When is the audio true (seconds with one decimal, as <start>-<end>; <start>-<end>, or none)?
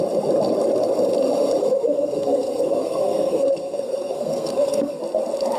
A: 0.0-1.6; 5.0-5.6